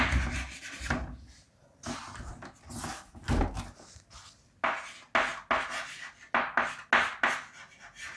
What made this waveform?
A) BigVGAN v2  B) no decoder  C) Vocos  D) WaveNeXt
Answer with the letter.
B